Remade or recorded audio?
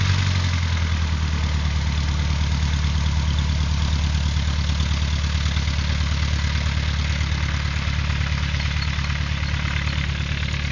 recorded